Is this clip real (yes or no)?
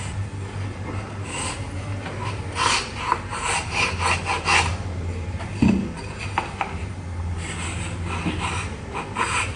yes